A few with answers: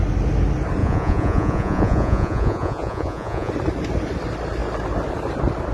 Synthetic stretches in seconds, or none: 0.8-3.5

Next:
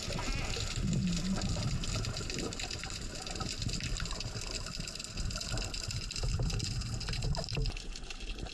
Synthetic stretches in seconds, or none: none

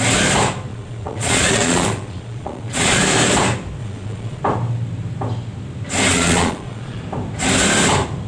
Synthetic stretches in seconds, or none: 0.7-3.0; 3.8-4.4; 6.1-7.0

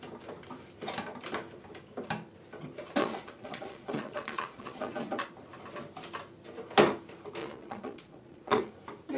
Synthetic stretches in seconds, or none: 3.0-5.3; 7.4-8.7

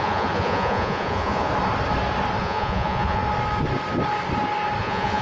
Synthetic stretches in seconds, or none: 0.0-1.5; 2.4-3.2; 4.8-5.2